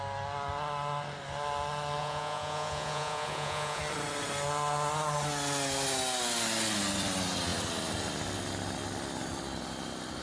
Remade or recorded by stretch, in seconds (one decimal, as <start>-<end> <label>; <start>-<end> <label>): 0.0-2.0 recorded; 2.0-3.8 remade; 3.8-10.2 recorded